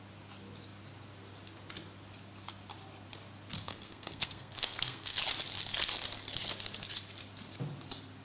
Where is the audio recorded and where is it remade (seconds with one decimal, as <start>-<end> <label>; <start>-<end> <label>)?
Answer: 0.0-3.6 recorded; 3.6-5.2 remade; 5.2-8.2 recorded